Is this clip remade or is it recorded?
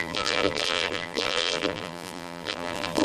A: remade